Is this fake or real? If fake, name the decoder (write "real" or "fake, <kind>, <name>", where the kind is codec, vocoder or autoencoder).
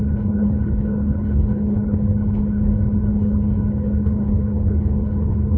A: fake, codec, HILCodec